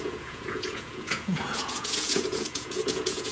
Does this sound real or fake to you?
fake